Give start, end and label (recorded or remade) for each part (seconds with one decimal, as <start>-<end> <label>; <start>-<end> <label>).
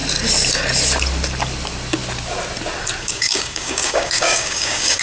0.0-3.0 recorded; 3.0-5.0 remade